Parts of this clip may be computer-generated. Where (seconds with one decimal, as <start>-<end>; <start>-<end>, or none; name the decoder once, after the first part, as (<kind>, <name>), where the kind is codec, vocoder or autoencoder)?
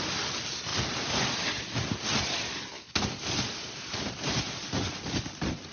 none